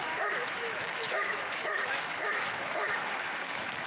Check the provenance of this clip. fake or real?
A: fake